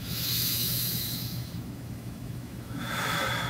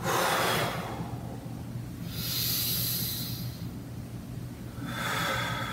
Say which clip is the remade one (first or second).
first